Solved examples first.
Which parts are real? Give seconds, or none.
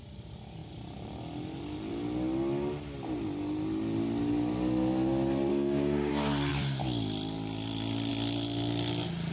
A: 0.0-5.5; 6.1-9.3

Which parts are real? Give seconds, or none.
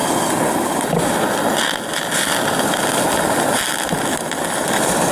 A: 0.0-5.1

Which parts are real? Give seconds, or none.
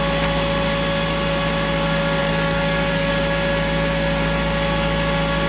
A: 0.0-2.2; 3.1-5.5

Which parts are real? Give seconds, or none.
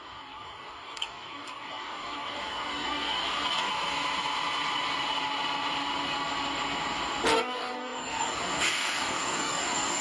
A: 3.7-7.3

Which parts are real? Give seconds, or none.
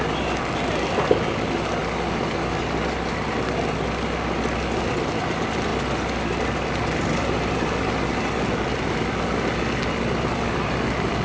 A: 0.0-11.2